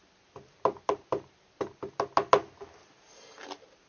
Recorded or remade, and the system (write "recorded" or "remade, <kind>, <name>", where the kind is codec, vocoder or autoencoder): recorded